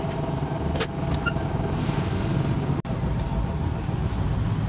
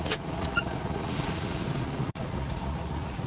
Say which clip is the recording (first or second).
first